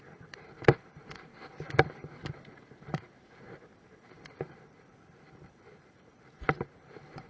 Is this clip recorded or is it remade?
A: remade